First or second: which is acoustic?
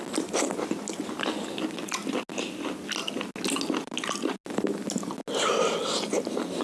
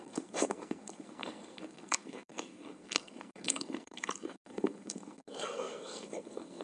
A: first